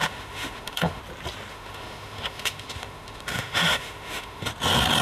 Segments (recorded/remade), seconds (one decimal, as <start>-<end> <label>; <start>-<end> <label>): 0.0-1.0 remade; 1.0-1.5 recorded; 1.5-4.5 remade; 4.5-5.0 recorded